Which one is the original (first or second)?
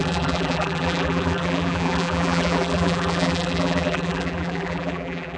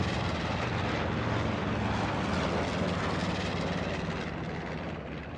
second